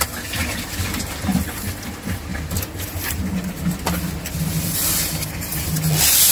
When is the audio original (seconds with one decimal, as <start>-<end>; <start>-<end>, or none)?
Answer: 0.0-6.3